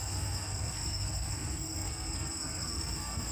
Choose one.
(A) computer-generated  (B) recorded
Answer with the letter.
A